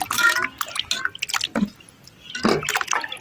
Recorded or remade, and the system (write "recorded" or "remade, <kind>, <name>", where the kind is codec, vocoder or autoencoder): recorded